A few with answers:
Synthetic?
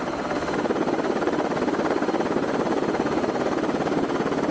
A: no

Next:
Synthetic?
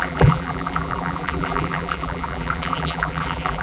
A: yes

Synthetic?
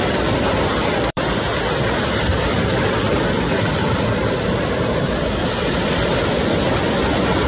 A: yes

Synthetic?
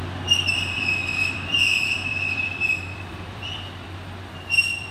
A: yes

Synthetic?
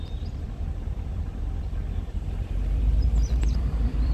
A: yes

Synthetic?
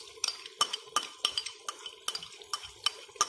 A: no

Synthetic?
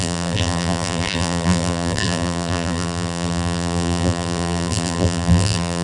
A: yes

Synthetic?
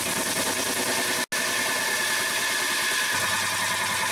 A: no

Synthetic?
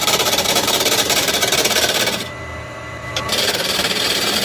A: yes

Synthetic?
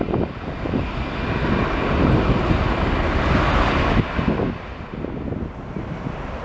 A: no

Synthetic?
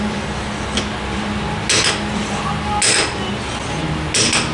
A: no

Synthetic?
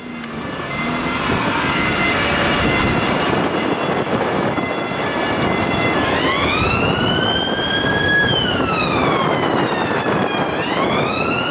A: no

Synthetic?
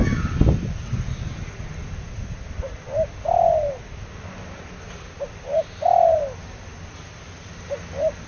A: no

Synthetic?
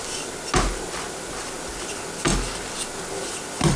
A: no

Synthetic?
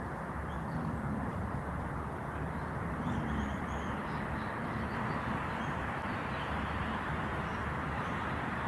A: yes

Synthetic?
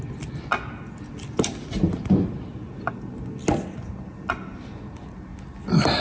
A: no